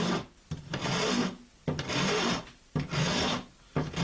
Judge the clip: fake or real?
real